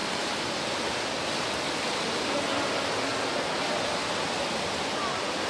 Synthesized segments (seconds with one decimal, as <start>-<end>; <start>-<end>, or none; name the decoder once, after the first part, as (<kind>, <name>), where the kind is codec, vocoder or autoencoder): none